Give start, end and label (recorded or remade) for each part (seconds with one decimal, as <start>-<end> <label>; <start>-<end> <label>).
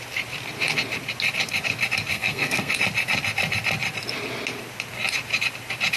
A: 0.0-2.1 recorded; 2.1-2.7 remade; 2.7-6.0 recorded